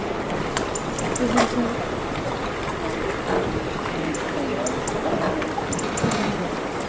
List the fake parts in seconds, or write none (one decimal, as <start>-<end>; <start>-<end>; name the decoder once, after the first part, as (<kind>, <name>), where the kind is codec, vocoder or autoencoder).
none